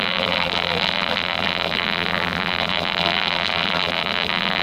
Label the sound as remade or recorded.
remade